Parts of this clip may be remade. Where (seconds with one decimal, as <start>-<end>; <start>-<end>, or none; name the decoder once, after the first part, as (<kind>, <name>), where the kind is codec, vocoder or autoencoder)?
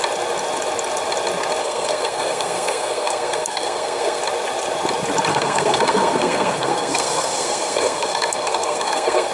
1.6-4.2 (codec, SNAC); 5.3-9.3